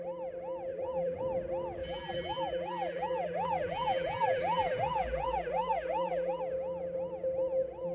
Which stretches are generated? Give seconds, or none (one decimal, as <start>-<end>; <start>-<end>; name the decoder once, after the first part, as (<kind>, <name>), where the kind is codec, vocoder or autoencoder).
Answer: 0.7-1.2 (vocoder, BigVGAN v2); 1.8-6.4